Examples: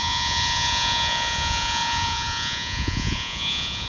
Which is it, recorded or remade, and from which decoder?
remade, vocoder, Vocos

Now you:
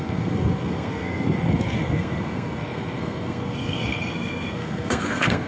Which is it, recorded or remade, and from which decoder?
remade, codec, SNAC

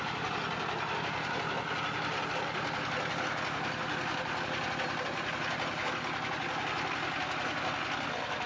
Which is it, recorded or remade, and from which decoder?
recorded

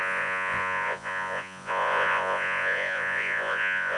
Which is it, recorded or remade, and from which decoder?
remade, vocoder, Vocos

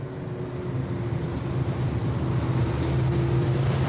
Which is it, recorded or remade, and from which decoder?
recorded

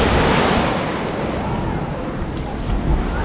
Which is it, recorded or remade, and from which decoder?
recorded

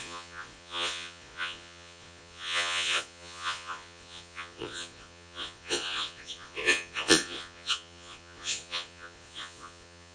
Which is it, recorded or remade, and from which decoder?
remade, vocoder, Vocos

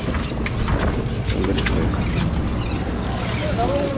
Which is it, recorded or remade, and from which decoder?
recorded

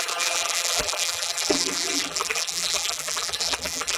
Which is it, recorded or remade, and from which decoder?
remade, vocoder, BigVGAN v2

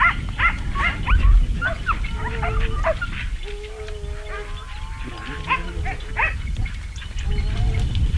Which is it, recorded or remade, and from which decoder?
recorded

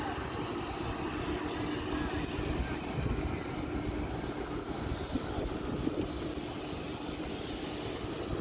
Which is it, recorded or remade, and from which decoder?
recorded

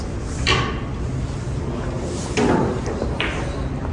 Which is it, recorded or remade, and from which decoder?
recorded